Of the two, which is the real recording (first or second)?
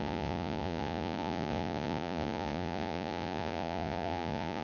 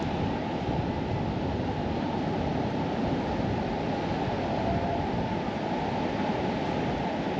second